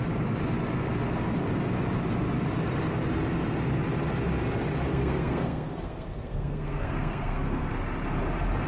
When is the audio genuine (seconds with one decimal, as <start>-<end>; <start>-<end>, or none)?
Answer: 0.0-4.9; 7.7-8.7